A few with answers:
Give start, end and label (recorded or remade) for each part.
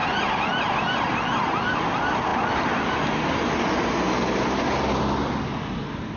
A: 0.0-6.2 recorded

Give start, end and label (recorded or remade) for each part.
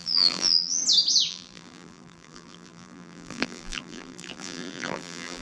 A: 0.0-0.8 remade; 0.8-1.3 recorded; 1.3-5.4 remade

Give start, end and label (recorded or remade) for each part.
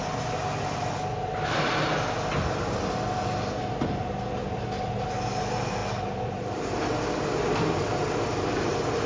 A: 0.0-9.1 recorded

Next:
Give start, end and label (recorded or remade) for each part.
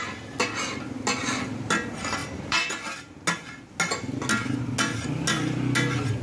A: 0.0-1.2 recorded; 1.2-1.7 remade; 1.7-2.2 recorded; 2.2-2.7 remade; 2.7-6.2 recorded